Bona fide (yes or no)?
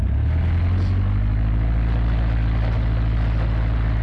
yes